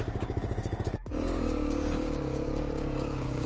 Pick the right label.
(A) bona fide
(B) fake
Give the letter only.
B